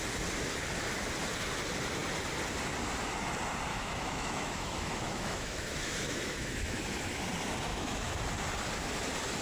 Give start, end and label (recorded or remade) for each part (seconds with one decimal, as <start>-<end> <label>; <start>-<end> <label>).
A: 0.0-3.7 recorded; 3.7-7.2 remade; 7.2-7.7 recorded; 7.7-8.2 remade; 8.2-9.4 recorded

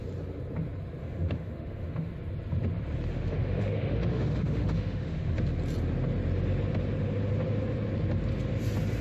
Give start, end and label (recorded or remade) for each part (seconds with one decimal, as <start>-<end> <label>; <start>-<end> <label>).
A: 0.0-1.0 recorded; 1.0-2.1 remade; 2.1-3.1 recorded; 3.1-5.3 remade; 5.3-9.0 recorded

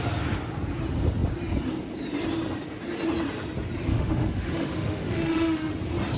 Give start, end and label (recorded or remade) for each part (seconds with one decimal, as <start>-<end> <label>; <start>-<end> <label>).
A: 0.0-3.9 recorded; 3.9-5.7 remade; 5.7-6.2 recorded

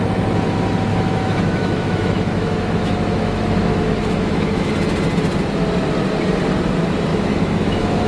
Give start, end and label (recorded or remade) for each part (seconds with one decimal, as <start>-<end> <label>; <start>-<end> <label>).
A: 0.0-0.9 recorded; 0.9-4.7 remade; 4.7-7.1 recorded; 7.1-8.1 remade

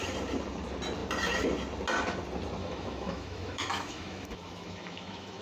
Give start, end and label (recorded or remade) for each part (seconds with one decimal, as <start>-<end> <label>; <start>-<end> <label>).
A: 0.0-2.6 recorded; 2.6-5.4 remade

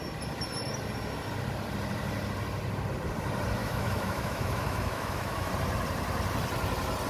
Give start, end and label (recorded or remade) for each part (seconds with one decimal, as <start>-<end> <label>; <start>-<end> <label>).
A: 0.0-3.6 recorded; 3.6-5.5 remade; 5.5-7.1 recorded